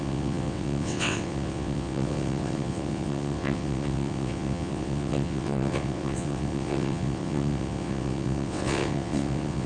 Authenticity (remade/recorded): remade